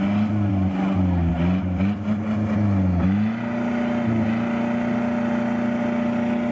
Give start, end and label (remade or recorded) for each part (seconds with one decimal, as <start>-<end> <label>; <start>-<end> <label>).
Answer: 0.0-6.5 recorded